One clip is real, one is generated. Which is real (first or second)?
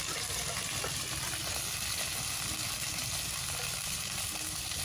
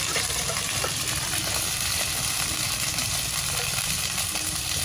first